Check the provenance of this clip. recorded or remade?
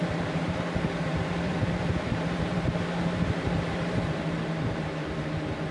remade